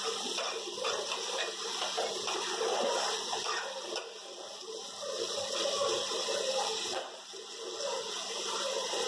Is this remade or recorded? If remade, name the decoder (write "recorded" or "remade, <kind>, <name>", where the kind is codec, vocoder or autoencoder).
remade, vocoder, BigVGAN v2